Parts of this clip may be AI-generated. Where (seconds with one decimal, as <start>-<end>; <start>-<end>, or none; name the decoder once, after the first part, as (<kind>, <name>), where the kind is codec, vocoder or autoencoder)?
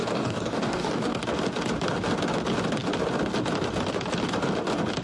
0.0-1.2 (codec, DAC)